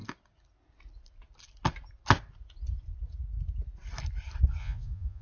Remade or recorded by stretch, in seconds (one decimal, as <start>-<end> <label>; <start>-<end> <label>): 0.0-4.6 recorded; 4.6-5.2 remade